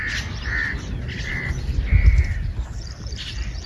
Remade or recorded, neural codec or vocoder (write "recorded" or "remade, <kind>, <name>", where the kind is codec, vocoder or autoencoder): recorded